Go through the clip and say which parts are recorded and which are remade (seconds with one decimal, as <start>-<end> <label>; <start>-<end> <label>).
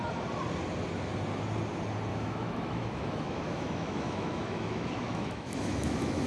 0.0-2.1 recorded; 2.1-6.3 remade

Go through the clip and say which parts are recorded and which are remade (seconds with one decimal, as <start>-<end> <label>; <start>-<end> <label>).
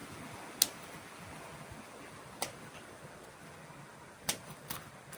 0.0-5.2 recorded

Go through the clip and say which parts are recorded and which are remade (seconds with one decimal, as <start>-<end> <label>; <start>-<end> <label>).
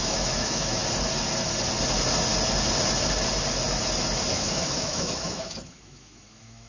0.0-0.8 remade; 0.8-4.3 recorded; 4.3-6.7 remade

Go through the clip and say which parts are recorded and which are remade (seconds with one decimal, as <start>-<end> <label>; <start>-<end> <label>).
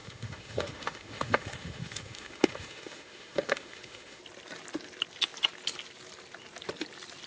0.0-4.2 remade; 4.2-7.3 recorded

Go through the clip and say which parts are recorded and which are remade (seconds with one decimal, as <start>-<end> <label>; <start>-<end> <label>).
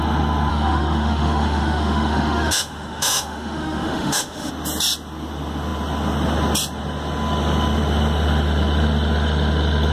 0.0-0.5 recorded; 0.5-4.5 remade; 4.5-9.9 recorded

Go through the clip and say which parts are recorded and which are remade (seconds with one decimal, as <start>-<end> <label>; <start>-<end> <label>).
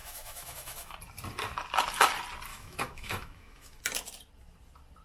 0.0-0.9 remade; 0.9-2.5 recorded; 2.5-3.8 remade; 3.8-5.0 recorded